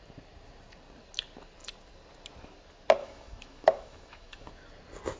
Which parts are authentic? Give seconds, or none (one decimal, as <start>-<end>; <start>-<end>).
0.0-3.0; 4.5-5.2